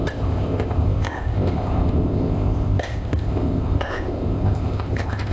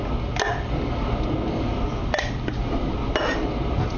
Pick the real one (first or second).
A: second